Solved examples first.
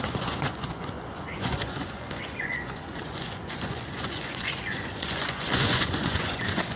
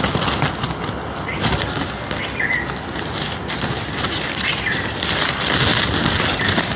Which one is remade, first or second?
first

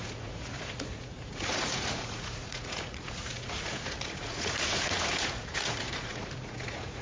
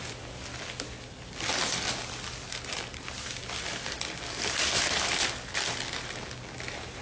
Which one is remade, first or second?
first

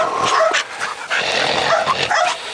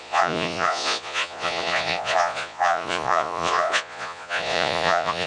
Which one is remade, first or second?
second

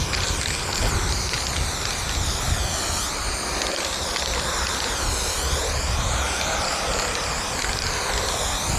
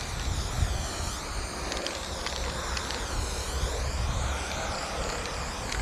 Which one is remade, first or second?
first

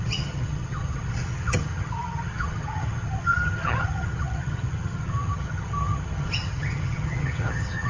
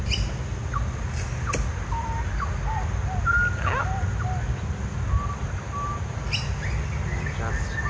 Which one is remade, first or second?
first